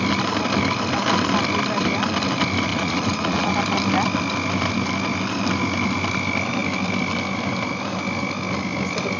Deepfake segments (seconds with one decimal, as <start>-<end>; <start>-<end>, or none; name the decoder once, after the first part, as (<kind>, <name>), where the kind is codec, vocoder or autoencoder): 2.7-3.5 (vocoder, Vocos)